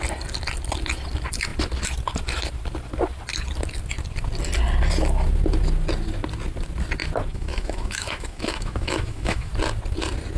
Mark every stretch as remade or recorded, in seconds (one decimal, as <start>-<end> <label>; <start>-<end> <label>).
0.0-7.3 recorded; 7.3-9.5 remade; 9.5-10.4 recorded